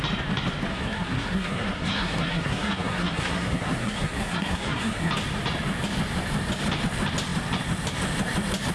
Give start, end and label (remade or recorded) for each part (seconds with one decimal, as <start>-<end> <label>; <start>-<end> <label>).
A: 0.0-0.7 recorded; 0.7-5.1 remade; 5.1-8.7 recorded